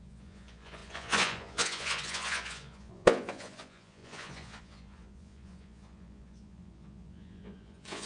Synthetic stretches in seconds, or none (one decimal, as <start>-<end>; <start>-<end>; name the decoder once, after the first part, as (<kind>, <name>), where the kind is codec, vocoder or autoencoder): 0.0-8.1 (vocoder, Vocos)